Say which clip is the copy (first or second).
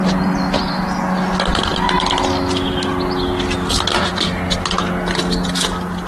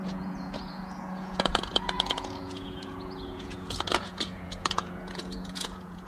second